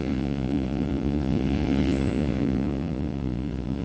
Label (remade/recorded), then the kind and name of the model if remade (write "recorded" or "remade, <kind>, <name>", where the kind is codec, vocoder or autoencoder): remade, vocoder, Vocos